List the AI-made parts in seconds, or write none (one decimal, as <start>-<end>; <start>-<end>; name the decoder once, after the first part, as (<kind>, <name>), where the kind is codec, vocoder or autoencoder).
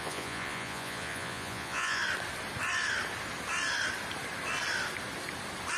0.0-2.0 (vocoder, Vocos)